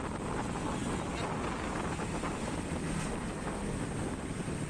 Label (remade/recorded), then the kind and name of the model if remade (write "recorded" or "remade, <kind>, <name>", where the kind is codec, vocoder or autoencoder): recorded